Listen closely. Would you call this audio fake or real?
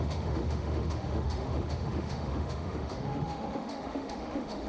fake